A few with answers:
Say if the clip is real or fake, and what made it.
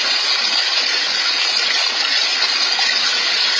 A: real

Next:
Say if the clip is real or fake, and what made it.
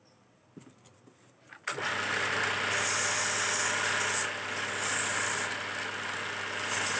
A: real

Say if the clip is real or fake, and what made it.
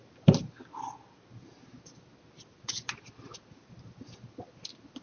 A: real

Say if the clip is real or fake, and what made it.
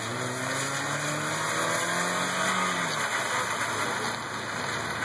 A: real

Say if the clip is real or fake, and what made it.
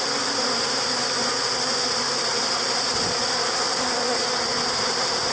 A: real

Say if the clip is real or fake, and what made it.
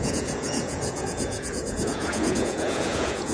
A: fake, vocoder, Vocos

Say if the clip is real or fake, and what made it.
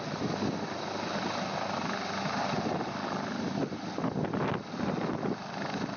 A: real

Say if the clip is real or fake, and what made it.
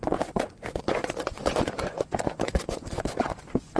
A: fake, vocoder, Vocos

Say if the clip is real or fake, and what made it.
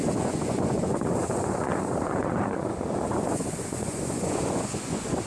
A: fake, vocoder, Vocos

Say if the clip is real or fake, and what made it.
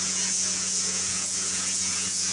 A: fake, vocoder, Vocos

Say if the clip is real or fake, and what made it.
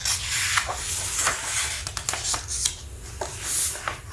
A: real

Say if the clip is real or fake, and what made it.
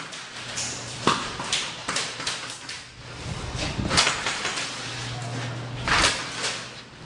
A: real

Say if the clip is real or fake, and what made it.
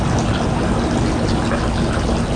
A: real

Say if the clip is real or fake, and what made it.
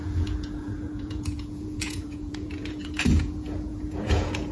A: fake, vocoder, Vocos